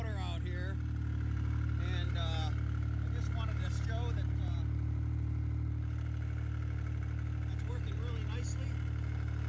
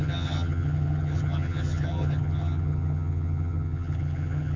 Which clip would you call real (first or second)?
first